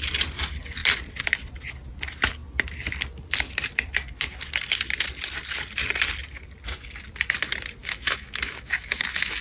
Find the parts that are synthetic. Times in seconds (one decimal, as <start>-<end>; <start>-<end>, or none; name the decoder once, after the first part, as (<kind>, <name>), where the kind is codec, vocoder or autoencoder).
7.8-9.4 (autoencoder, DAC-VAE)